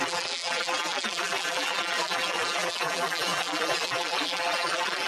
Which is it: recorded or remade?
remade